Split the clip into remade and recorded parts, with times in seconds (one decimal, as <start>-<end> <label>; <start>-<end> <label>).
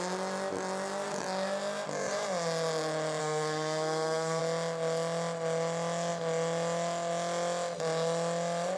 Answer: 0.0-3.2 recorded; 3.2-4.4 remade; 4.4-8.8 recorded